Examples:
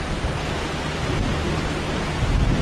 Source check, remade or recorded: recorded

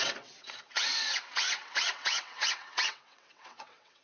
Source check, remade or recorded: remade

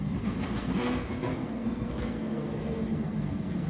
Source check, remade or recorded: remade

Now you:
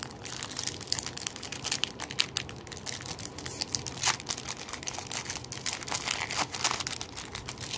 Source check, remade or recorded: recorded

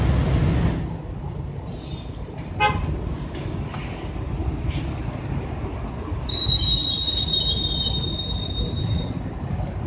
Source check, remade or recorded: recorded